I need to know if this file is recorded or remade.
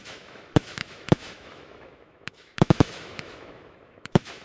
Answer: remade